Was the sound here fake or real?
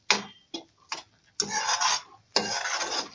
real